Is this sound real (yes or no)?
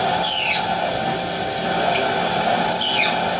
yes